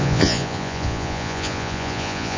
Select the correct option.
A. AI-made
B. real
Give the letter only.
A